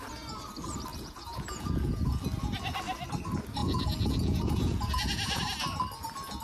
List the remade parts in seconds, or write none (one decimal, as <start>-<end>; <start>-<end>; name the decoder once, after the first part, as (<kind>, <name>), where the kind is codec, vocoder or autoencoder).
0.9-2.2 (vocoder, Vocos); 3.6-5.4